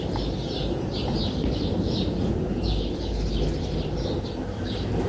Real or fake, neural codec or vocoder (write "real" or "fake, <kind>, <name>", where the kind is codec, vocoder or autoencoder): real